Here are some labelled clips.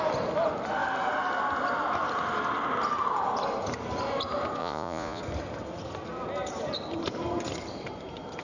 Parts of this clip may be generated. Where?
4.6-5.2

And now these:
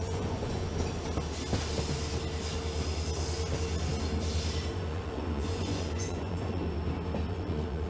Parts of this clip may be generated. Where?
0.0-0.7; 4.7-6.6; 7.3-7.9

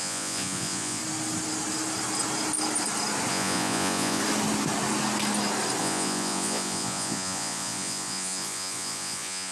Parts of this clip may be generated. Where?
0.0-1.0; 3.3-4.2; 5.8-9.5

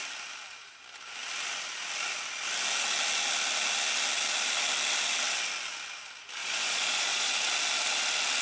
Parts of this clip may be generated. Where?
6.4-7.3

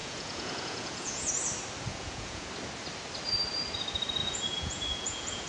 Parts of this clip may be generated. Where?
0.0-1.3; 1.9-2.5; 4.2-5.5

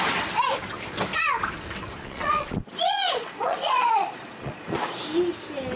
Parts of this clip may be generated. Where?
2.0-5.0

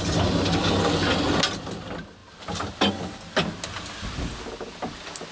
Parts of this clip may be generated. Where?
none

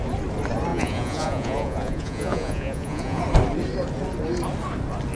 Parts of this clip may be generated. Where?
0.7-3.2